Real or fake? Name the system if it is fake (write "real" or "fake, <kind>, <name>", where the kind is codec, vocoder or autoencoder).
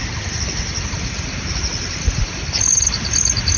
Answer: real